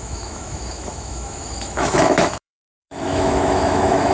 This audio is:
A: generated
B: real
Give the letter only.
A